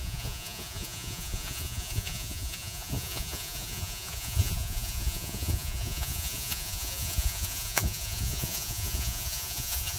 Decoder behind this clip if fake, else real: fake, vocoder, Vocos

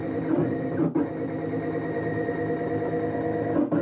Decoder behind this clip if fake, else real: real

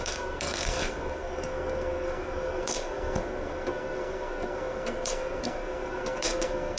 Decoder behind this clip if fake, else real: fake, codec, SNAC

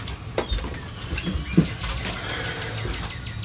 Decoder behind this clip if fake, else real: real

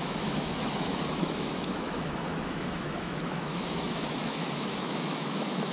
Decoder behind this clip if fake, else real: fake, autoencoder, DAC-VAE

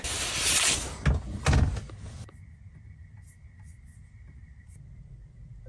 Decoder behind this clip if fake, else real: real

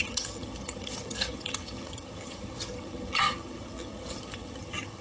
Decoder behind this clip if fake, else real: fake, vocoder, HiFi-GAN